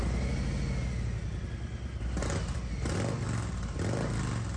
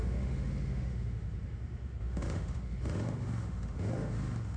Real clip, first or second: first